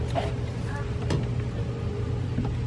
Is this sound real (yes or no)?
yes